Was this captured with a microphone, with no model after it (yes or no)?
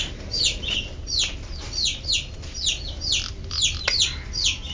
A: yes